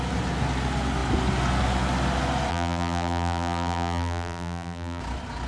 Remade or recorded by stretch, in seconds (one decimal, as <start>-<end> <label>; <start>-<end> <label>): 0.0-2.5 recorded; 2.5-5.0 remade; 5.0-5.5 recorded